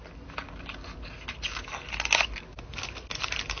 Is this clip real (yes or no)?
yes